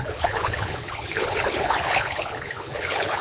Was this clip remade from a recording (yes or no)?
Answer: yes